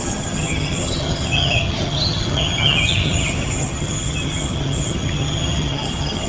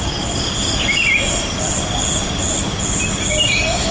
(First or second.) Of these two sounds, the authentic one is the second